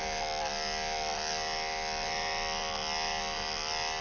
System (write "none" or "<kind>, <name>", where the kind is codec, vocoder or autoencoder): none